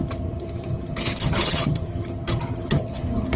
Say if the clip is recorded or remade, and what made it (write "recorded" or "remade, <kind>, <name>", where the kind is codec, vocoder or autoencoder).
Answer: remade, vocoder, HiFi-GAN